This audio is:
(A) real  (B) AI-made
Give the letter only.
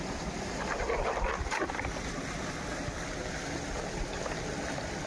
A